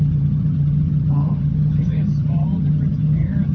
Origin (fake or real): fake